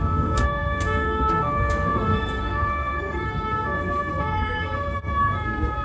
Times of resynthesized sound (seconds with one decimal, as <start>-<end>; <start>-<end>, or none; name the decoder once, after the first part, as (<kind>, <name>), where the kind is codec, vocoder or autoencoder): 0.0-5.8 (codec, SNAC)

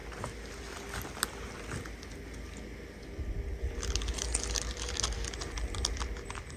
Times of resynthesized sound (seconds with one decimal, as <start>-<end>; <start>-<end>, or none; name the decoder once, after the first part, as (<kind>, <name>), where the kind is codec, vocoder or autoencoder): none

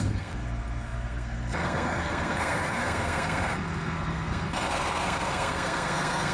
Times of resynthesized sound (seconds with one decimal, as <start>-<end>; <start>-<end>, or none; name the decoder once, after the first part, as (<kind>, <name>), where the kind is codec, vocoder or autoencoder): 0.0-6.3 (codec, SNAC)

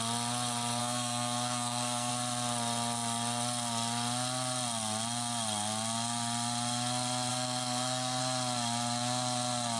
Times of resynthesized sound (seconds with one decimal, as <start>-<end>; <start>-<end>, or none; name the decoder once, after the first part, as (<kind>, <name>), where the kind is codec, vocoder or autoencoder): 0.8-2.1 (codec, SNAC); 7.3-8.2

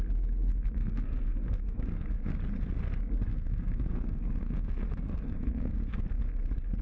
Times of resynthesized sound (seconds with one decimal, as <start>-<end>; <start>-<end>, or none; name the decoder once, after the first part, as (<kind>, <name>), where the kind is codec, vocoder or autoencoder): 0.5-2.0 (codec, SNAC); 3.3-5.7

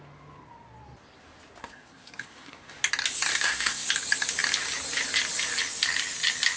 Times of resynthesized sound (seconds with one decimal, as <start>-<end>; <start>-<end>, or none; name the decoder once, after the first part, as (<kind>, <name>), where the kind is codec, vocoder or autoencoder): 1.6-2.8 (codec, SNAC); 3.3-3.9

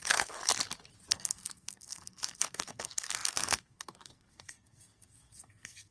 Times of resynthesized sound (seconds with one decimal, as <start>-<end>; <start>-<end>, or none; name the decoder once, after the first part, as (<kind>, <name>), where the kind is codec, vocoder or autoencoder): 0.0-0.5 (codec, SNAC); 1.1-5.9